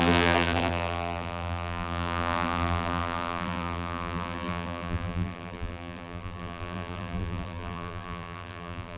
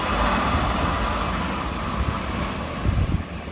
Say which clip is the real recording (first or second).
second